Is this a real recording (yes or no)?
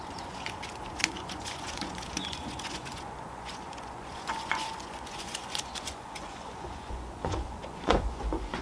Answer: no